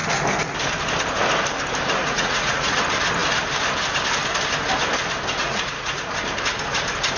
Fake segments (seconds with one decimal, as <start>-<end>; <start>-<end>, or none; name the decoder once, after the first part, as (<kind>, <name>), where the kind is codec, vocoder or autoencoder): 2.0-2.8 (vocoder, Vocos); 5.4-6.1